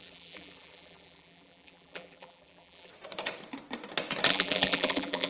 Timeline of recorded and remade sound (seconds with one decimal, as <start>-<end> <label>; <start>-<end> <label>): 0.0-2.9 remade; 2.9-4.3 recorded; 4.3-5.3 remade